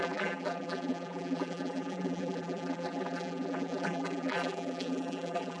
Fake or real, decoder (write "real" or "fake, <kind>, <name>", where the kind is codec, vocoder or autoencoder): fake, vocoder, BigVGAN v2